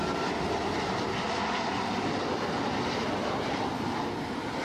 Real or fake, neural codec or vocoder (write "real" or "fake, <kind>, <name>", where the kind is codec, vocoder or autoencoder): real